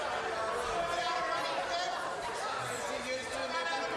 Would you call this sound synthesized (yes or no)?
no